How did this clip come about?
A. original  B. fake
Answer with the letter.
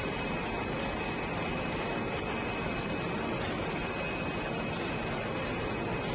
A